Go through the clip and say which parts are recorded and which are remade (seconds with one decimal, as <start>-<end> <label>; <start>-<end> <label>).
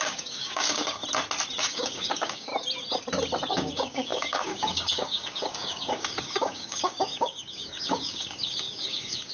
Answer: 0.0-1.0 remade; 1.0-1.6 recorded; 1.6-2.5 remade; 2.5-3.5 recorded; 3.5-9.3 remade